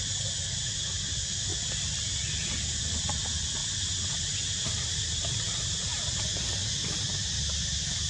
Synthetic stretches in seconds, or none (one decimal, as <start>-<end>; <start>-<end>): 1.5-2.8; 3.6-4.9